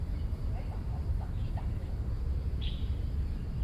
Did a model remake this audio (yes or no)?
yes